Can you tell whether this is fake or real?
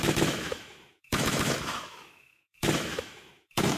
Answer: fake